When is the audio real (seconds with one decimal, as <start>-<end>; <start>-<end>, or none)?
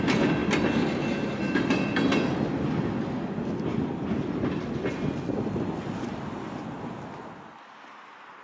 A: 0.0-8.4